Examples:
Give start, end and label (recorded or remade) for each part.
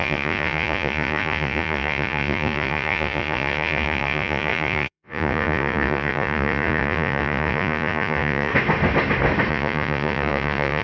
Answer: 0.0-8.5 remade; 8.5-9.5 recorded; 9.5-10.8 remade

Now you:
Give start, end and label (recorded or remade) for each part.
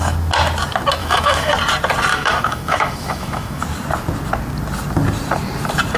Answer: 0.0-1.0 recorded; 1.0-1.5 remade; 1.5-2.1 recorded; 2.1-3.6 remade; 3.6-6.0 recorded